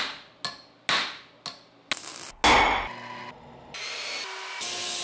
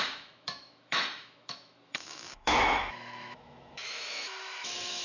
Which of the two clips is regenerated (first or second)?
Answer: second